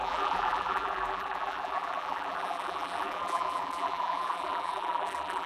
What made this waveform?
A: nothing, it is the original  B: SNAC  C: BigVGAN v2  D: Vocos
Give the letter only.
C